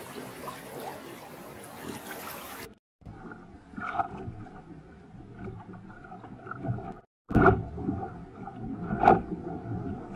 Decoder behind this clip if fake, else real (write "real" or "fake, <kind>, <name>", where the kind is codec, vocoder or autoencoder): real